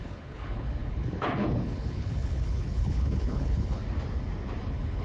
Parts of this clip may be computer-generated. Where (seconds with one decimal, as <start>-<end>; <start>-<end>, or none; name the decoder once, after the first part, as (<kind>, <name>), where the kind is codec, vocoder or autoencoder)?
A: 0.0-3.8 (codec, HILCodec); 4.6-5.0